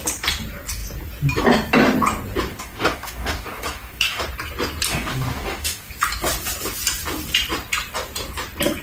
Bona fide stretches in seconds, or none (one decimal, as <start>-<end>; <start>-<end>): 0.0-2.5; 4.2-4.9; 5.9-8.8